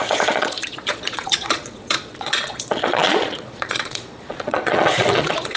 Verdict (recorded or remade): remade